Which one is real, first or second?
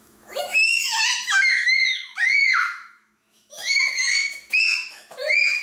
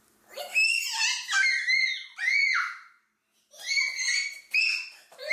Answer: second